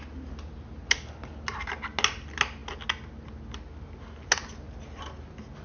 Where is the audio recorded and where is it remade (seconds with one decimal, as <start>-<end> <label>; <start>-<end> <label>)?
0.0-5.6 recorded